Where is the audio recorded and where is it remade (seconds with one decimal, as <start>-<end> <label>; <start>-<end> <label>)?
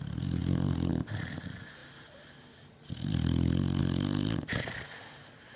0.0-5.6 recorded